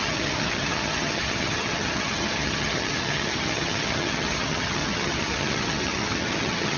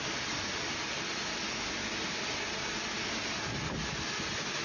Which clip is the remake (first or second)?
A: first